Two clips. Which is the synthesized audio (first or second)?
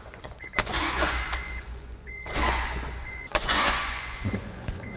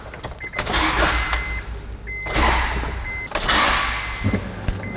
first